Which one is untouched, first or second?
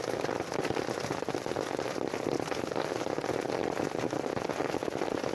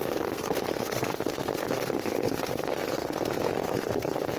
first